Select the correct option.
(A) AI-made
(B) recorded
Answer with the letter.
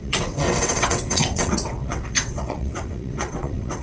A